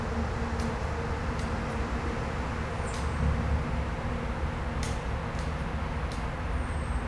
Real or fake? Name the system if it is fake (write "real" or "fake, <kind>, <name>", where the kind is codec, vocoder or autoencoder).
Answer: real